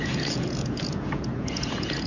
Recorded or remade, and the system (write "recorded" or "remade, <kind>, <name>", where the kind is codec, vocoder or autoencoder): remade, vocoder, Vocos